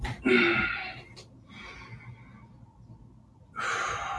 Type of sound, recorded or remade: recorded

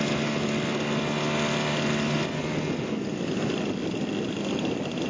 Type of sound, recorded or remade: recorded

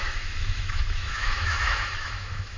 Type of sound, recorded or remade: remade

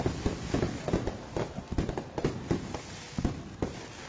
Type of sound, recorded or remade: recorded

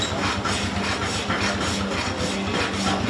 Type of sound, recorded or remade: recorded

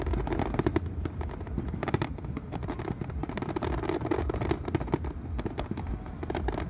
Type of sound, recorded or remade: recorded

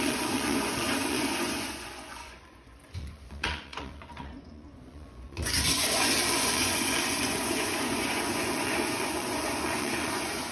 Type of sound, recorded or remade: remade